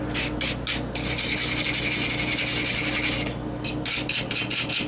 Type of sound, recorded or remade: recorded